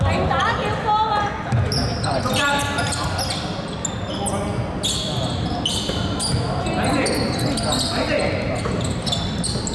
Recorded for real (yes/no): yes